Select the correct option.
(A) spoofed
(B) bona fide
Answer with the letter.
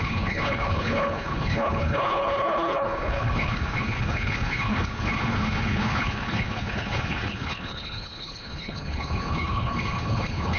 A